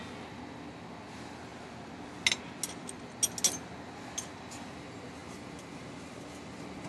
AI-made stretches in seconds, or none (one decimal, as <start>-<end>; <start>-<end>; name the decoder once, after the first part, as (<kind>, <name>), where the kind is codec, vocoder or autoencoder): none